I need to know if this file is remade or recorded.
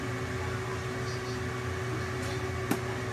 recorded